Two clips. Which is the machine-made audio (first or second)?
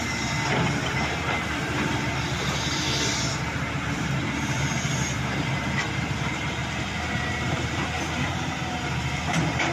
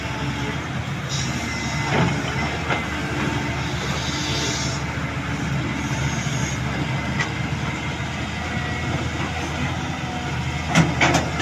first